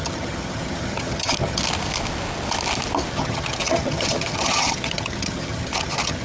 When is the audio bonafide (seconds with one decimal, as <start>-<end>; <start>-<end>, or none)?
1.6-3.1